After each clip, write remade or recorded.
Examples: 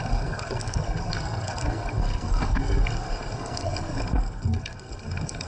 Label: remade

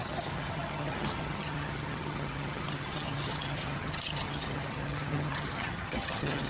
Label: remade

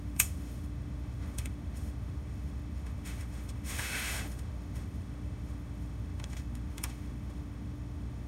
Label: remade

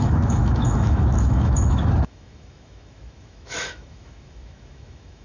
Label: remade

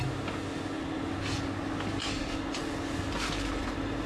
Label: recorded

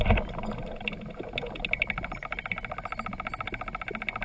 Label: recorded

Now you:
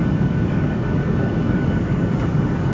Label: remade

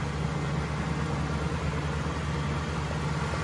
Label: recorded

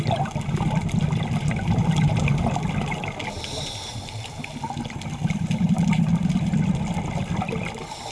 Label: recorded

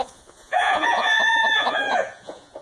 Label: remade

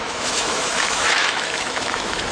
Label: remade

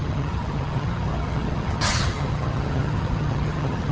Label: remade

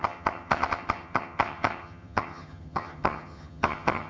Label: remade